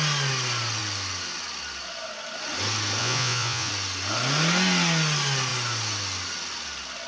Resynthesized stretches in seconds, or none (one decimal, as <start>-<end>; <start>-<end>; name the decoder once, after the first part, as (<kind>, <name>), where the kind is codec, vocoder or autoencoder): 3.0-3.7 (vocoder, Vocos)